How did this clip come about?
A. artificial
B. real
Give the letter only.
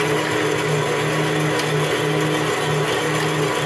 B